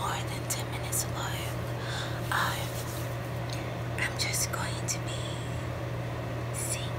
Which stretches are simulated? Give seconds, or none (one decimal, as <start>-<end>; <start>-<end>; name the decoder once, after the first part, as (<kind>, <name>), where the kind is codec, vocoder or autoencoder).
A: none